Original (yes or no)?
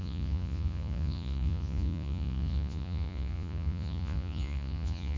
no